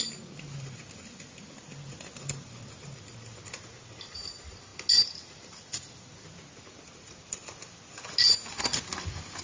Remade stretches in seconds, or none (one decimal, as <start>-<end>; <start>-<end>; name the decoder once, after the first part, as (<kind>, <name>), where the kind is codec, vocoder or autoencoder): none